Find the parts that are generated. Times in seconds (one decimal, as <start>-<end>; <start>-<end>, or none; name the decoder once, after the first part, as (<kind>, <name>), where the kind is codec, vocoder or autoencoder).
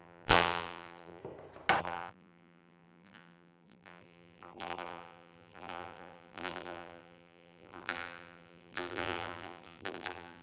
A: 0.0-1.2 (vocoder, BigVGAN v2); 1.8-10.4